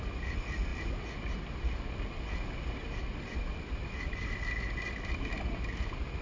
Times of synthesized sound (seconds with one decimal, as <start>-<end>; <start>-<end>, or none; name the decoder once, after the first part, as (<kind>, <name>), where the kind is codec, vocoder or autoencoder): none